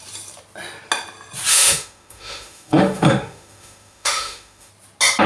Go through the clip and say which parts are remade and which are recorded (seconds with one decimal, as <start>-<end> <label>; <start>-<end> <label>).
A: 0.0-1.5 recorded; 1.5-4.7 remade; 4.7-5.3 recorded